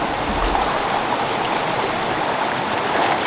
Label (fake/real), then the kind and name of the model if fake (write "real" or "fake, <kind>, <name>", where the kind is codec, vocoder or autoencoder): real